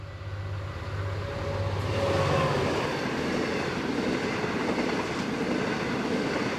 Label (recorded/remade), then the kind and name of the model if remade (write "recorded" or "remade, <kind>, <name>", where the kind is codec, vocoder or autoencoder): recorded